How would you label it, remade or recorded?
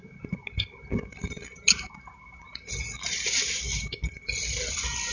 recorded